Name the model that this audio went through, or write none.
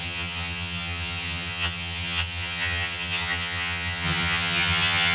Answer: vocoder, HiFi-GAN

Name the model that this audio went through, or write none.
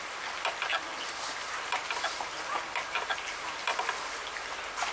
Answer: none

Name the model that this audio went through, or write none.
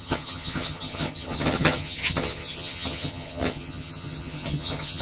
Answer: vocoder, HiFi-GAN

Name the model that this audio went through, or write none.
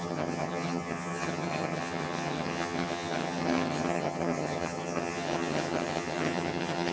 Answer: vocoder, HiFi-GAN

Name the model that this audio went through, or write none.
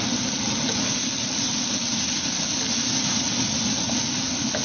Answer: none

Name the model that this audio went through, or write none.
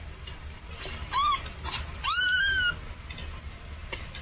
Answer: none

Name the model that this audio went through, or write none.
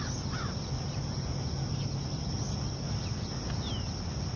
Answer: none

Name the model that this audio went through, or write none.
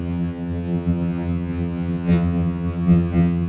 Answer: vocoder, HiFi-GAN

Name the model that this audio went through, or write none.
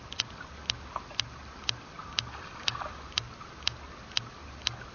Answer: none